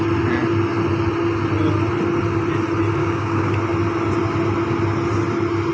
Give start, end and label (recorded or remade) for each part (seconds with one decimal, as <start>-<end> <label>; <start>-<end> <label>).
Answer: 0.0-3.0 recorded; 3.0-3.5 remade; 3.5-5.7 recorded